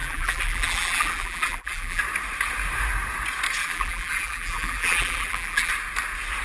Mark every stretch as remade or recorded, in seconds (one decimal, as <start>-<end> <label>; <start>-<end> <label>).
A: 0.0-2.0 remade; 2.0-3.6 recorded; 3.6-5.7 remade; 5.7-6.4 recorded